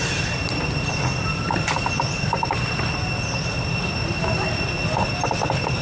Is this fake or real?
real